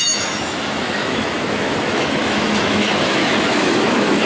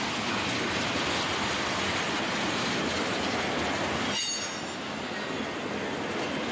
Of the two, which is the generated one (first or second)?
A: first